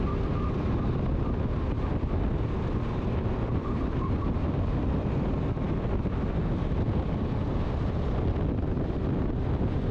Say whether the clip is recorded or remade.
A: recorded